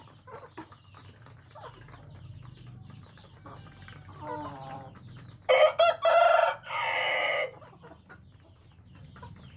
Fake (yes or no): no